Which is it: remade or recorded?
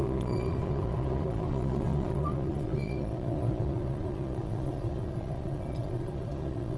remade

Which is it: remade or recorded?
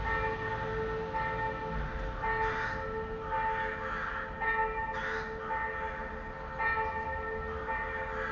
recorded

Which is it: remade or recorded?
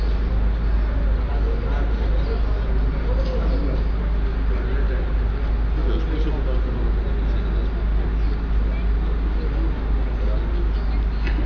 recorded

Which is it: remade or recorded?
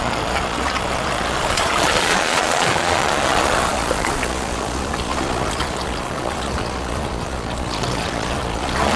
remade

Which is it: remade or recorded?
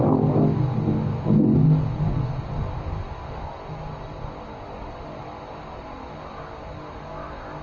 recorded